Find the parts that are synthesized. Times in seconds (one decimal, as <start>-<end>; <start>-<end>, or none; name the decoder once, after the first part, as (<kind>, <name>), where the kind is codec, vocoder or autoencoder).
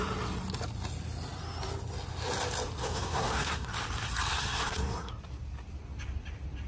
2.8-3.7 (codec, SNAC); 4.3-5.1